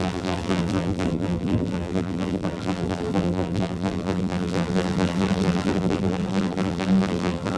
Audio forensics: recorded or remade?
remade